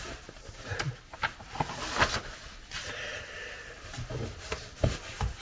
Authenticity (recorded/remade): recorded